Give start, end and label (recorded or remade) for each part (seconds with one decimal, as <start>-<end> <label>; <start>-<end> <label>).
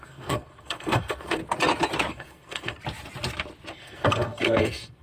0.0-1.4 remade; 1.4-2.1 recorded; 2.1-2.8 remade; 2.8-3.7 recorded; 3.7-5.0 remade